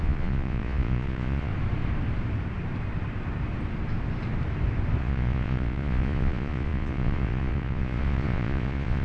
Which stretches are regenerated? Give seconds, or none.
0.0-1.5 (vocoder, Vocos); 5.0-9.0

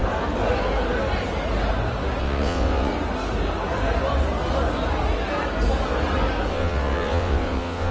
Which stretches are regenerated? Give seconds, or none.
2.2-2.9 (vocoder, WaveNeXt); 6.5-7.9

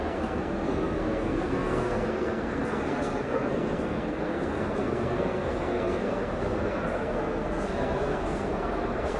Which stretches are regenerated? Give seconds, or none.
0.0-9.2 (codec, SNAC)

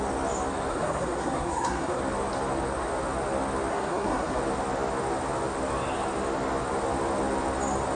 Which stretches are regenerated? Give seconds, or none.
0.7-2.0 (codec, SNAC); 3.7-4.4

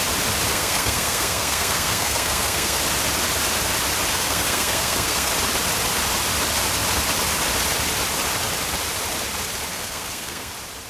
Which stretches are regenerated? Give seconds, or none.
0.5-2.8 (codec, SNAC); 4.1-5.3; 9.7-10.5